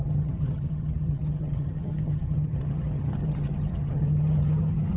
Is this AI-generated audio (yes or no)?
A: yes